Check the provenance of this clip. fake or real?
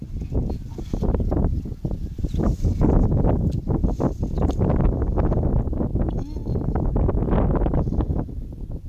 real